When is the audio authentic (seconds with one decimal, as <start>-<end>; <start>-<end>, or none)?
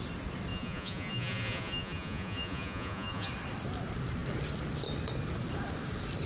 0.0-0.5; 3.3-6.3